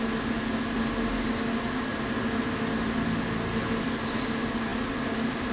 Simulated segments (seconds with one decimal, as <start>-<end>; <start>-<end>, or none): none